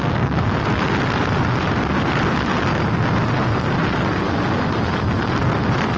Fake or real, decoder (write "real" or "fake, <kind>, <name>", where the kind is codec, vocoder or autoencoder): real